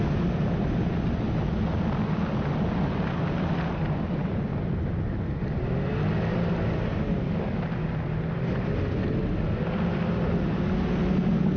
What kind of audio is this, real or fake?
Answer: real